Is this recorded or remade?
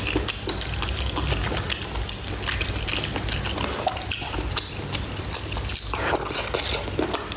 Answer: recorded